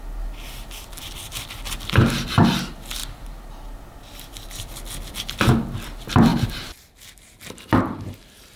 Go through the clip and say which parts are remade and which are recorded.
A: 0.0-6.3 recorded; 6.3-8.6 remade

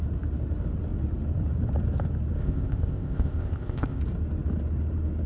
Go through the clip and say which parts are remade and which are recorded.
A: 0.0-2.4 recorded; 2.4-4.0 remade; 4.0-5.3 recorded

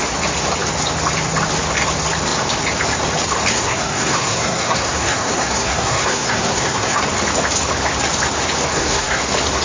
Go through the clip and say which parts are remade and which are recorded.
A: 0.0-3.5 recorded; 3.5-7.0 remade; 7.0-8.7 recorded; 8.7-9.2 remade; 9.2-9.6 recorded